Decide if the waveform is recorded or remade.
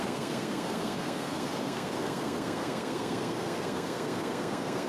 remade